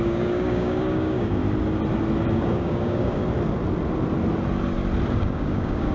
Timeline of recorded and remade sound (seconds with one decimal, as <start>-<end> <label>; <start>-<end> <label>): 0.0-1.4 remade; 1.4-2.2 recorded; 2.2-3.2 remade; 3.2-5.1 recorded; 5.1-5.9 remade